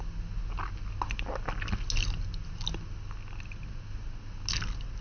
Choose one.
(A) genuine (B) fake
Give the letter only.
A